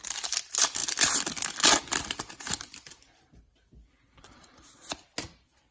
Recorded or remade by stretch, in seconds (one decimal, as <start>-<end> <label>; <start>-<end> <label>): 0.0-5.7 remade